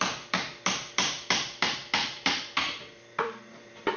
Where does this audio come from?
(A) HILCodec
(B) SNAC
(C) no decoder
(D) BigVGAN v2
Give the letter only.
D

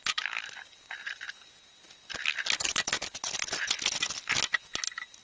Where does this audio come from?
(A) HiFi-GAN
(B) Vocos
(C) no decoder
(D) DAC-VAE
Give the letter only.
C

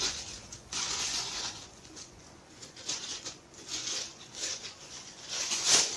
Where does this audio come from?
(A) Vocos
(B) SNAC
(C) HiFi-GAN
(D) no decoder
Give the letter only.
A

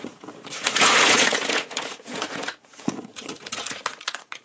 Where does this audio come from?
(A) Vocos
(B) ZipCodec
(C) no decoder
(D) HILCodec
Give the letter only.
A